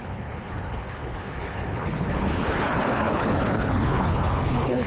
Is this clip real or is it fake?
fake